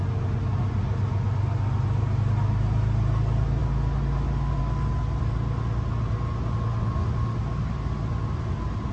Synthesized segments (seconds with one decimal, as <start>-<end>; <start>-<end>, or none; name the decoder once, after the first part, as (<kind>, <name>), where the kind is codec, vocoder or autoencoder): none